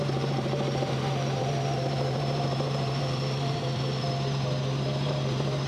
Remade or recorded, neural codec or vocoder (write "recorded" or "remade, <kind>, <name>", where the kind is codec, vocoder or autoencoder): remade, vocoder, BigVGAN v2